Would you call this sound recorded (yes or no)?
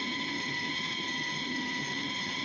no